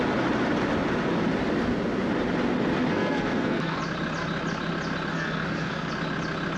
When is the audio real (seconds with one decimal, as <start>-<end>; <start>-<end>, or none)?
0.0-2.9; 3.8-5.1; 5.9-6.6